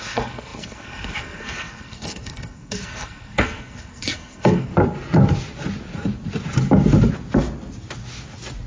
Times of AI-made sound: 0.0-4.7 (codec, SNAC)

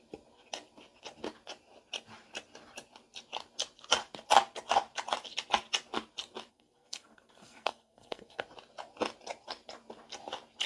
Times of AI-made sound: 6.5-8.4 (codec, SNAC)

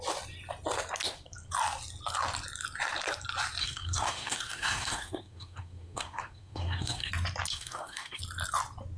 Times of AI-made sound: 3.6-7.1 (codec, SNAC); 7.5-8.2

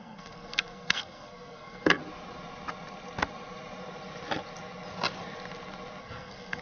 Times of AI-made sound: 0.0-2.0 (codec, SNAC); 6.0-6.6